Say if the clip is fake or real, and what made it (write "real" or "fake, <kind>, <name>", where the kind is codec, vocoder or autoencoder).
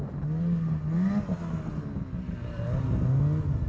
real